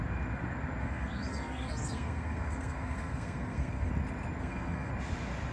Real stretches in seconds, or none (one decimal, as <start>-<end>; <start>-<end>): 0.0-0.8; 3.9-4.4; 4.9-5.5